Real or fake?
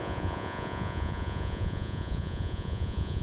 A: fake